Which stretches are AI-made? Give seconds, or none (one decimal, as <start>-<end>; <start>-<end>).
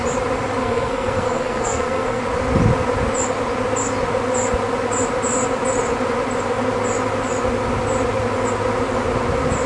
0.6-2.2